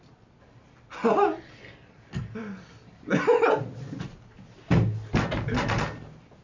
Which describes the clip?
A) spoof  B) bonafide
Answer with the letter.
B